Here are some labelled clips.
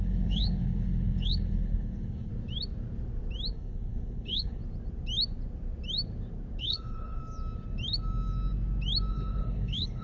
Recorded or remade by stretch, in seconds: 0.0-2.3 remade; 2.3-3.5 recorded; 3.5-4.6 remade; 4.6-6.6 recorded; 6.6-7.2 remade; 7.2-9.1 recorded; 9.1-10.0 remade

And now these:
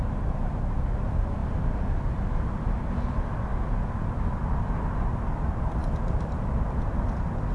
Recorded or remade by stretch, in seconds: 0.0-7.5 recorded